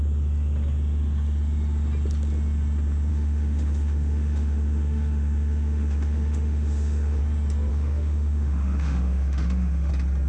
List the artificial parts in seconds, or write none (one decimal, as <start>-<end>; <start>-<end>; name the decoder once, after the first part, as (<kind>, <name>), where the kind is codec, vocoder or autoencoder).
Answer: 3.1-7.2 (autoencoder, DAC-VAE); 7.7-9.9